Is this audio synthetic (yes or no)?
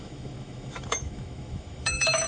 yes